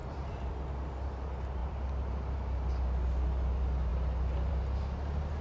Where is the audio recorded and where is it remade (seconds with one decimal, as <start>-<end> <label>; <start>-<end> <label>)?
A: 0.0-0.5 remade; 0.5-1.6 recorded; 1.6-2.1 remade; 2.1-5.4 recorded